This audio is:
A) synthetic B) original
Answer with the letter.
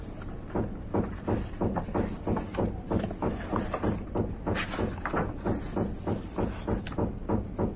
B